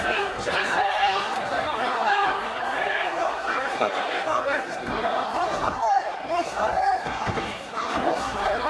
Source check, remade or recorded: remade